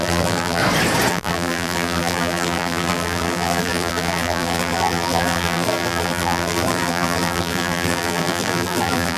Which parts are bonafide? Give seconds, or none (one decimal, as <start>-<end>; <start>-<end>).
0.6-1.1